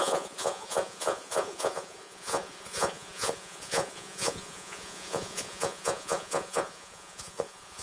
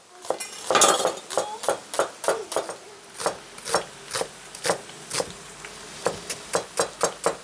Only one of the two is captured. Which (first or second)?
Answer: second